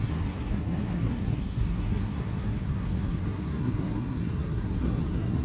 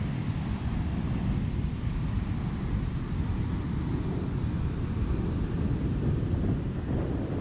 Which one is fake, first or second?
first